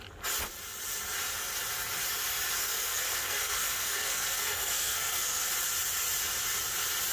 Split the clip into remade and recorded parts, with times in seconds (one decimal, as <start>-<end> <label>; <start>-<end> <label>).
0.0-2.6 recorded; 2.6-5.5 remade; 5.5-7.1 recorded